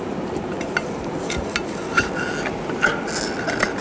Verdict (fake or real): real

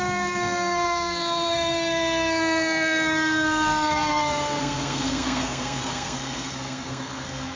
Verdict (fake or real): fake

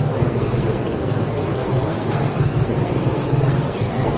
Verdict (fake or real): fake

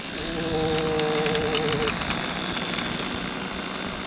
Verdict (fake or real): real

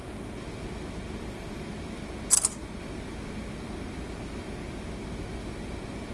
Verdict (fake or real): real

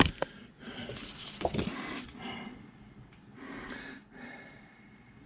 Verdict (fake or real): real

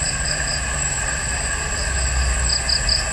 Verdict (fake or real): real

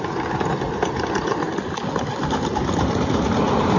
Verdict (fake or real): real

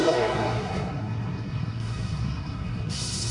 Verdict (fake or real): fake